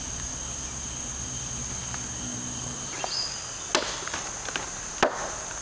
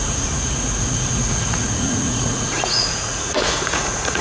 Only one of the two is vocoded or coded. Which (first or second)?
second